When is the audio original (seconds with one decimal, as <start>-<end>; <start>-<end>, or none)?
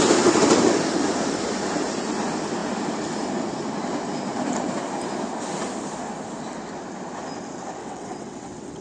0.0-7.8